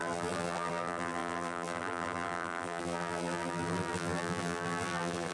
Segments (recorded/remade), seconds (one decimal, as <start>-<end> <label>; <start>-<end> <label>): 0.0-5.3 remade